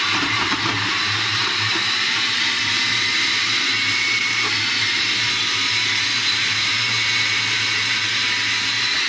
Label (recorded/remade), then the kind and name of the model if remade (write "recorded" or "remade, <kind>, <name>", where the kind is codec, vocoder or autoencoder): remade, vocoder, BigVGAN v2